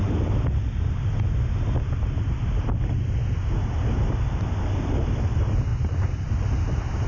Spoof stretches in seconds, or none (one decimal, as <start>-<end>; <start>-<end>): none